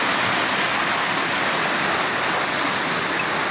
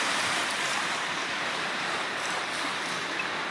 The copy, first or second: second